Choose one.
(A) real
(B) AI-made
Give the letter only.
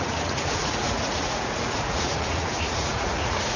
B